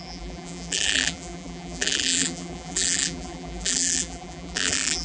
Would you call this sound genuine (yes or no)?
no